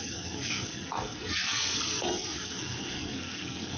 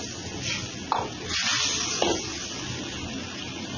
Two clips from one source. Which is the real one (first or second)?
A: second